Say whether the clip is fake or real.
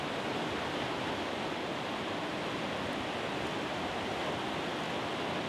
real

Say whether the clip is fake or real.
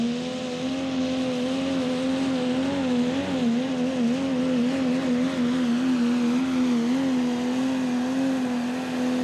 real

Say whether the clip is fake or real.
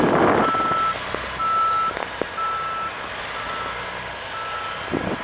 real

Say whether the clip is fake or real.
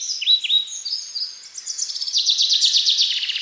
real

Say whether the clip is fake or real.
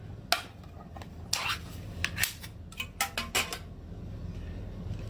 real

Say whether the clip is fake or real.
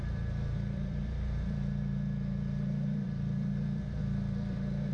fake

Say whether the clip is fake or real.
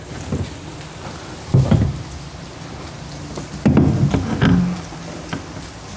real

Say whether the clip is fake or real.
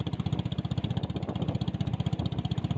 real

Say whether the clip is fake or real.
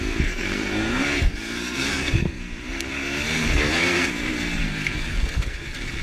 fake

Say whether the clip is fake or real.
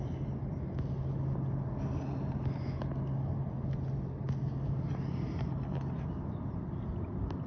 real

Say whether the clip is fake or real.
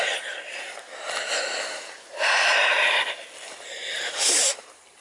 real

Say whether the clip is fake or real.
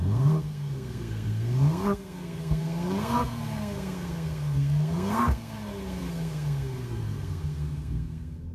fake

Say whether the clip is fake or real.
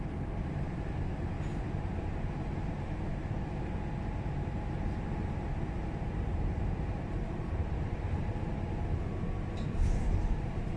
fake